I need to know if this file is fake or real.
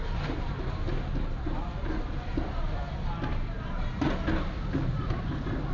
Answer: real